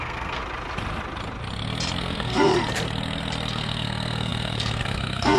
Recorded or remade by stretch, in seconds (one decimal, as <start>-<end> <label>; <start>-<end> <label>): 0.0-0.4 remade; 0.4-2.0 recorded; 2.0-2.5 remade; 2.5-3.5 recorded; 3.5-5.4 remade